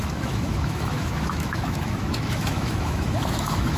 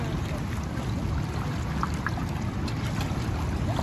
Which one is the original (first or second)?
second